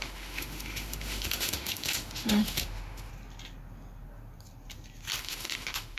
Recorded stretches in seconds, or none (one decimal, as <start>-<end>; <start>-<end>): 3.1-5.2